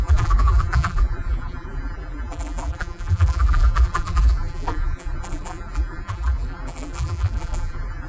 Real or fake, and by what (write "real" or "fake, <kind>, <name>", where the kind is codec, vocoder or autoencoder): fake, vocoder, BigVGAN v2